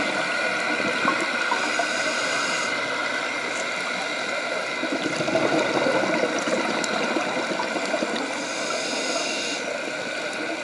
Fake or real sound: real